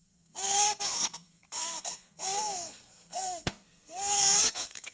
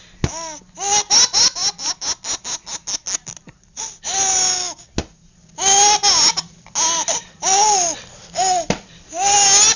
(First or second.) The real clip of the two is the second